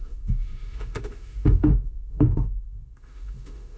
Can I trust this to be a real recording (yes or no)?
no